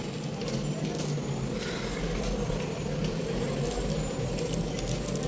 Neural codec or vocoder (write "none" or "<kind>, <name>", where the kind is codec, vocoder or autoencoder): none